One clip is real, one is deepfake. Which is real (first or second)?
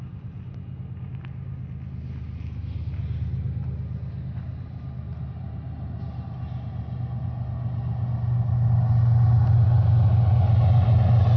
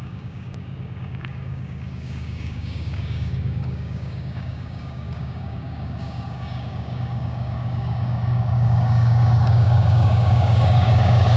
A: first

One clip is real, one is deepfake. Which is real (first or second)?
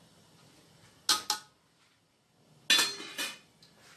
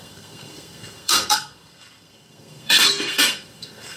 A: first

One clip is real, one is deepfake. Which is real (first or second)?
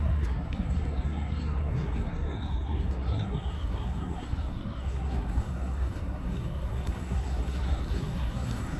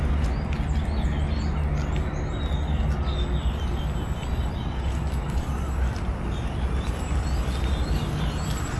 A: second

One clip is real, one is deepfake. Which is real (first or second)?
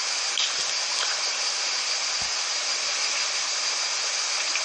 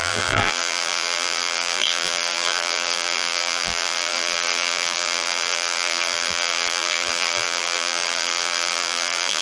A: first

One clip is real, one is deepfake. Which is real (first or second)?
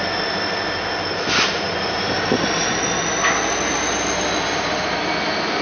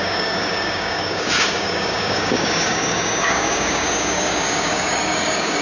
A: first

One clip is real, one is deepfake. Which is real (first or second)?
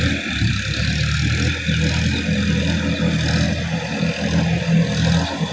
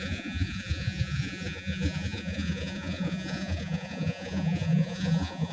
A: first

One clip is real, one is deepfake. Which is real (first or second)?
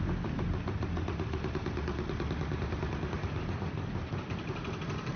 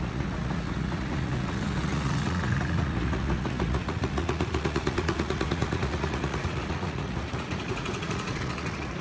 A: first